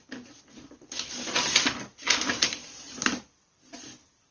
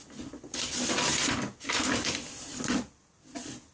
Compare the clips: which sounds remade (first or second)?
first